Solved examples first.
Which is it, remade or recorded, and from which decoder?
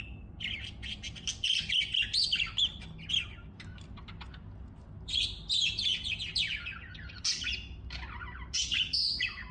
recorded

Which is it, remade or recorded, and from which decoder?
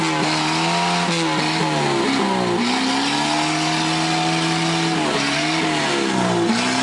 recorded